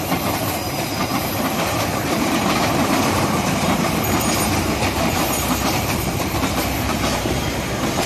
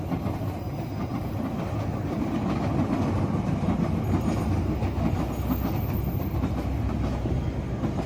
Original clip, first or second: second